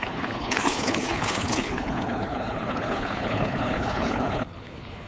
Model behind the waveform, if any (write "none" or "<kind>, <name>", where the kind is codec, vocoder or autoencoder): codec, HILCodec